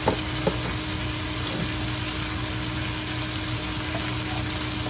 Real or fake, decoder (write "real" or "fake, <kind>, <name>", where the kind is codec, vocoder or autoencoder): real